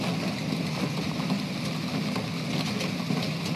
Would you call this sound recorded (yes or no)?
yes